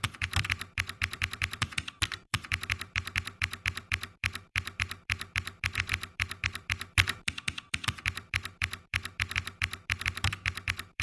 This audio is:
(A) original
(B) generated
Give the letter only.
B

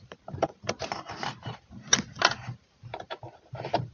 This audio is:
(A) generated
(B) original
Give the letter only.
A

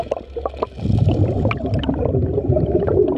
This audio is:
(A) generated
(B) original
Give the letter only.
B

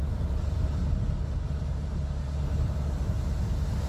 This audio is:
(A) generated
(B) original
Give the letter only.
B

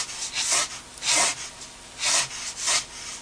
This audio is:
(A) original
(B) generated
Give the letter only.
A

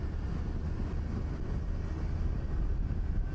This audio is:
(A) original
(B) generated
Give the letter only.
A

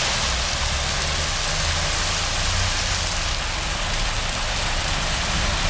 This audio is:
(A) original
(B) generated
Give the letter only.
A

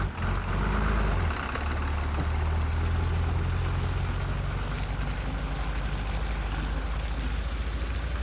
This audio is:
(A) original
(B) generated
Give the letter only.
A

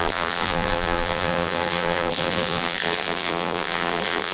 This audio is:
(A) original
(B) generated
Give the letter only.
B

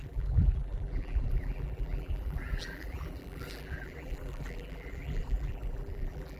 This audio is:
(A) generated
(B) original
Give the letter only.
A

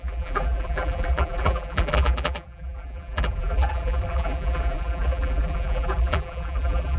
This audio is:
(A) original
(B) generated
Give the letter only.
B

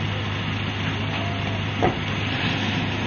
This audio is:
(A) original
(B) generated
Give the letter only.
A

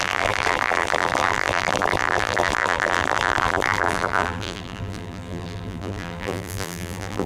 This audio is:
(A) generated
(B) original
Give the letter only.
A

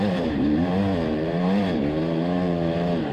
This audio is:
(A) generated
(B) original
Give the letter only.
A